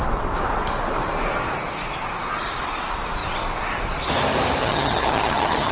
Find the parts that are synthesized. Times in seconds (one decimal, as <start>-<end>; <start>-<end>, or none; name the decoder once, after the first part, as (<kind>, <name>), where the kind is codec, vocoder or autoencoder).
4.6-5.7 (vocoder, HiFi-GAN)